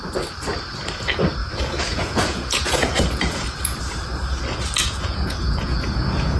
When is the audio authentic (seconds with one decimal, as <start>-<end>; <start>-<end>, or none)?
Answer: 0.0-1.4; 3.8-4.8